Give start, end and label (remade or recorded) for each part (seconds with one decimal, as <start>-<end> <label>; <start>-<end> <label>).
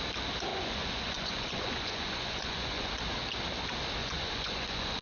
0.0-0.5 recorded; 0.5-2.9 remade; 2.9-4.0 recorded; 4.0-5.0 remade